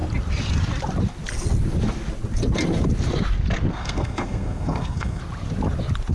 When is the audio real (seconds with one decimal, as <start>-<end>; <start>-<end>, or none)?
0.0-3.7; 5.2-6.1